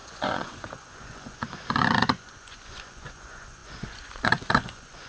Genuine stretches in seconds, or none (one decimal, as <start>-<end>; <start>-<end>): none